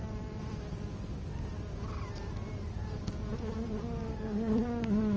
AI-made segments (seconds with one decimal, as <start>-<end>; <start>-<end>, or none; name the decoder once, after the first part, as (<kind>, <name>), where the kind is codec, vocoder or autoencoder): 0.7-1.3 (codec, DAC); 2.8-3.3; 4.0-5.2